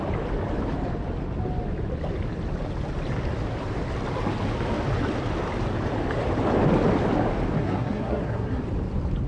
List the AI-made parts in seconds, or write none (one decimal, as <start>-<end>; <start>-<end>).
7.6-8.6